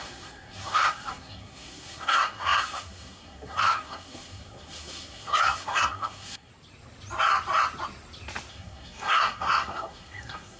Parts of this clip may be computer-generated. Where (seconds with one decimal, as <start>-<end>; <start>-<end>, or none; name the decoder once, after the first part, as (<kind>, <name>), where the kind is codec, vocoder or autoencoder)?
0.0-6.5 (codec, SNAC); 8.5-10.6